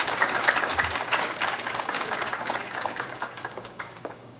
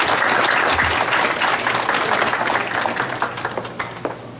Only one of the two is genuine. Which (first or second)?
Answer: second